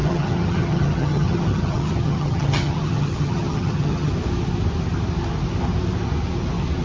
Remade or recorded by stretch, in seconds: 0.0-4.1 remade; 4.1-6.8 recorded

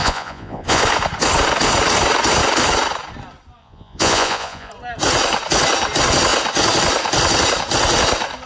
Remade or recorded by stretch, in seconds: 0.0-0.8 remade; 0.8-3.6 recorded; 3.6-4.7 remade; 4.7-8.5 recorded

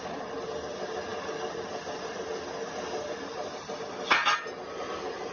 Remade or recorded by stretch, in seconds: 0.0-5.3 recorded

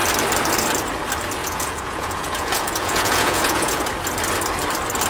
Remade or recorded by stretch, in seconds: 0.0-1.4 recorded; 1.4-3.9 remade; 3.9-5.1 recorded

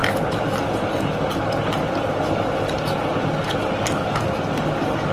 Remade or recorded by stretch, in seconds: 0.0-5.1 recorded